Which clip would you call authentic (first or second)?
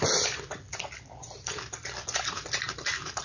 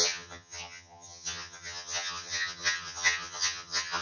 first